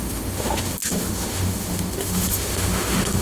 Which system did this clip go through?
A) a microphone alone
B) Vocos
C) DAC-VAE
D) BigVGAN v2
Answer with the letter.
C